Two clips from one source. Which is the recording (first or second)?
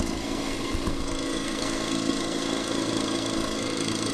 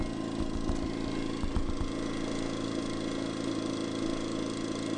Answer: second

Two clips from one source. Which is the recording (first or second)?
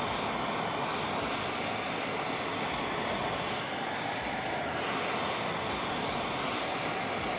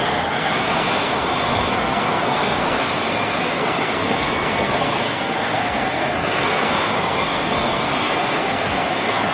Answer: first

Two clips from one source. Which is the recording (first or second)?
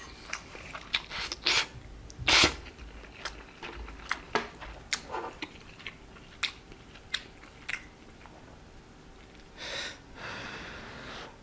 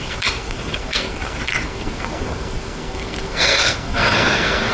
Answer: first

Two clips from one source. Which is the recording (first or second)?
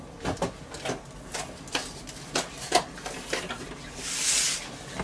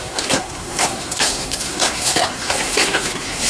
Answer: first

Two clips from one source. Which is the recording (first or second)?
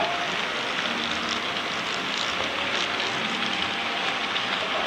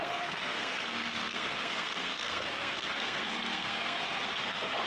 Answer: first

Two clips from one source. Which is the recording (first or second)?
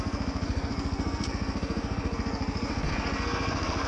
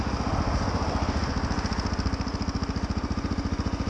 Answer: second